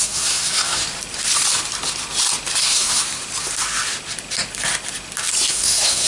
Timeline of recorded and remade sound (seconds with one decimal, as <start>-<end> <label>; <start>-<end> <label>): 0.0-0.8 remade; 0.8-2.6 recorded; 2.6-3.0 remade; 3.0-5.5 recorded; 5.5-6.1 remade